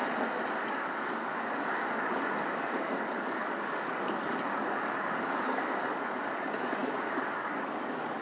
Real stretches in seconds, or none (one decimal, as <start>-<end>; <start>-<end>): 0.0-0.7